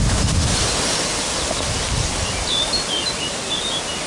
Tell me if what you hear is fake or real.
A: real